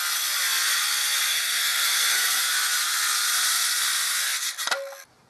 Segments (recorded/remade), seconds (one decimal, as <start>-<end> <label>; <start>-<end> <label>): 0.0-1.3 recorded; 1.3-2.4 remade; 2.4-5.3 recorded